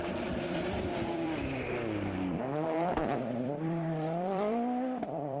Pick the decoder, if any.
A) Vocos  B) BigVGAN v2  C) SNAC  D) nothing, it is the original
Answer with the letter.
B